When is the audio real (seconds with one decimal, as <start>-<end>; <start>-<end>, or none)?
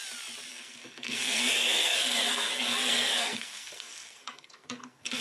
0.0-0.5